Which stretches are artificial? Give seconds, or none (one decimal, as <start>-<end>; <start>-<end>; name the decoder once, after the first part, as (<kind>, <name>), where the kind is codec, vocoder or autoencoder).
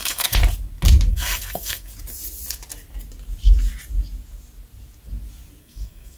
0.0-0.4 (codec, SNAC); 1.1-1.9; 5.6-6.2